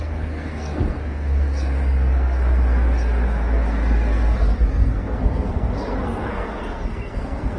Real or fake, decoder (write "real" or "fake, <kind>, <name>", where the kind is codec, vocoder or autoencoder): fake, codec, SNAC